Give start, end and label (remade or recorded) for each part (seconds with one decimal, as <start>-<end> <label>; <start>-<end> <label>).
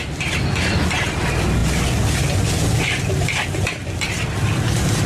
0.0-5.1 recorded